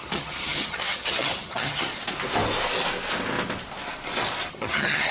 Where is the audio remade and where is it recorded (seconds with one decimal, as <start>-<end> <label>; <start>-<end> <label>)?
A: 0.0-1.9 remade; 1.9-4.5 recorded; 4.5-5.1 remade